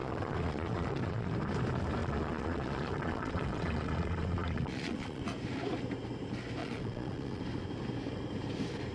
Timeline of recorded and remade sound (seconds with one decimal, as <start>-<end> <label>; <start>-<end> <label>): 0.0-1.3 remade; 1.3-2.0 recorded; 2.0-5.2 remade; 5.2-6.6 recorded; 6.6-7.4 remade; 7.4-8.9 recorded